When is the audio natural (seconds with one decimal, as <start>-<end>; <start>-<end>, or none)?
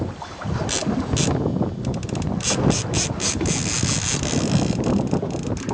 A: 0.0-5.7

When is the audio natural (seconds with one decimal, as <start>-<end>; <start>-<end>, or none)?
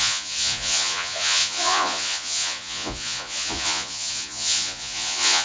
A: none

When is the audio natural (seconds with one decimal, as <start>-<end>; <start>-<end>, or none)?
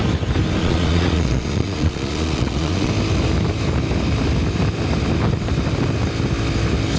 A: 0.0-0.6; 2.9-7.0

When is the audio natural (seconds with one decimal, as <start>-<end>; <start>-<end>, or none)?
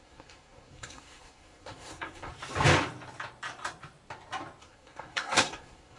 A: 2.3-4.6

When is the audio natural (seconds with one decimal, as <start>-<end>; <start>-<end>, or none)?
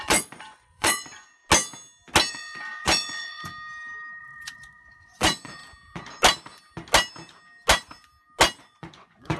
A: 1.4-2.3; 3.5-4.2; 5.6-8.6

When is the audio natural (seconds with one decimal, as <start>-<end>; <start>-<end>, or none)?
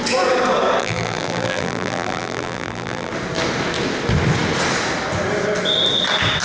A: 0.0-0.8; 3.1-6.4